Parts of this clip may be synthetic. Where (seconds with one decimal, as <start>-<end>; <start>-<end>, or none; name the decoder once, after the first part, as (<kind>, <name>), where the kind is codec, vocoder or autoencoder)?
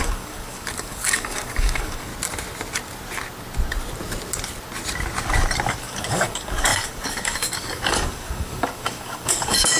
0.0-2.1 (codec, DAC); 5.8-9.8